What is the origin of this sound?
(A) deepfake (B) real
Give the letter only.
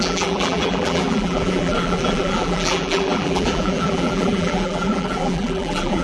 A